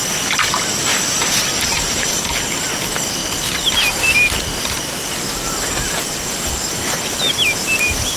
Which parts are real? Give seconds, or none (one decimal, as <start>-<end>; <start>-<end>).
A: 0.0-8.2